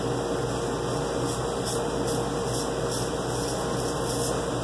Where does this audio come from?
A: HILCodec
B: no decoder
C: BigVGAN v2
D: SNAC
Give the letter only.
B